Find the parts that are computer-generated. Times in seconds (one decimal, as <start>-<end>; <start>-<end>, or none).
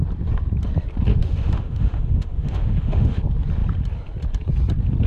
1.1-3.2